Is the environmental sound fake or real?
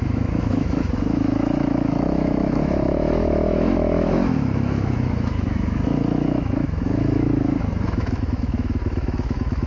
fake